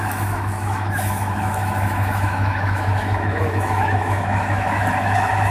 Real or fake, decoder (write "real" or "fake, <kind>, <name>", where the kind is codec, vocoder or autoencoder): fake, autoencoder, DAC-VAE